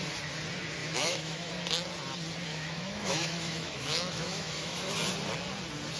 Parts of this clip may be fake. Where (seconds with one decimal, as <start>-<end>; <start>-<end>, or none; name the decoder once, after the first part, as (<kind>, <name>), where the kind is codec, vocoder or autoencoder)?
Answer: 0.8-1.5 (autoencoder, DAC-VAE); 2.5-4.9